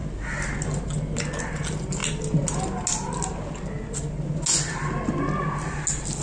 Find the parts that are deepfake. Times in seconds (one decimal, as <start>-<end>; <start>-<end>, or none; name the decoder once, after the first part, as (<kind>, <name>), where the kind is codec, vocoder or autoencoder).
none